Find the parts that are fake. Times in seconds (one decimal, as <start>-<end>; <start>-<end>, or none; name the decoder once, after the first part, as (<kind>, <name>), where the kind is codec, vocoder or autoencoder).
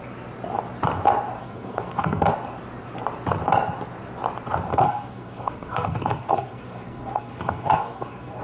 1.4-2.3 (codec, SNAC); 4.7-8.4